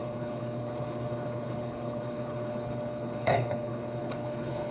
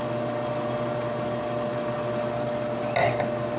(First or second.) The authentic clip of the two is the second